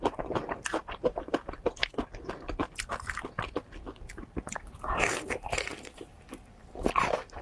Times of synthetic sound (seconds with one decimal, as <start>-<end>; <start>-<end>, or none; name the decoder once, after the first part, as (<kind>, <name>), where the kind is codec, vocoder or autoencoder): 0.0-1.8 (vocoder, BigVGAN v2); 5.1-6.1; 6.7-7.4